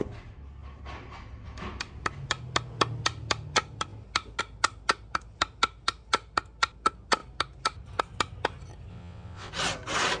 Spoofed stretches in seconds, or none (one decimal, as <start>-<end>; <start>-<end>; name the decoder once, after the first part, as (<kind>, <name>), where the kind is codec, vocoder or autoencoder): 8.9-9.5 (vocoder, WaveNeXt)